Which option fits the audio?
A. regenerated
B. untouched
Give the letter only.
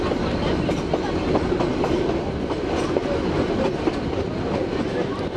B